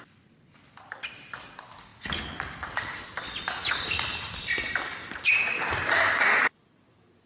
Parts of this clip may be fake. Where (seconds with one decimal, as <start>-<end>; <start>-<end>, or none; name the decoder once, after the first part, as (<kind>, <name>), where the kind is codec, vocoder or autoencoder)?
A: none